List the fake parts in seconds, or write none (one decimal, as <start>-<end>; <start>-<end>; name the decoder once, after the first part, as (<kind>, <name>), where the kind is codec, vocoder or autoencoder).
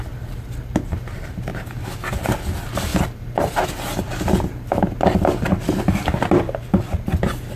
0.0-1.5 (vocoder, BigVGAN v2); 2.4-2.9